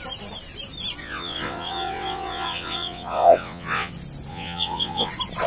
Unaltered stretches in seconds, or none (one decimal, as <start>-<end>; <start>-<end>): 0.0-1.0; 3.9-4.3; 5.1-5.5